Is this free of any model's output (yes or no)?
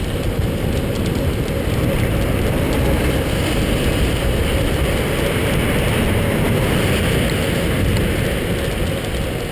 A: yes